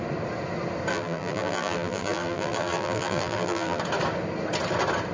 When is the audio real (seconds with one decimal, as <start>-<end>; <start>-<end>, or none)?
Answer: 0.0-0.9; 3.8-5.1